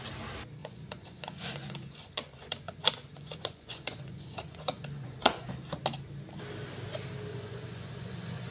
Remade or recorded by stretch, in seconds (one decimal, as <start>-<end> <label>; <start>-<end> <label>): 0.0-0.6 recorded; 0.6-5.5 remade; 5.5-7.3 recorded; 7.3-8.5 remade